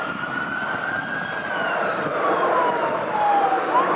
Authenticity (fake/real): real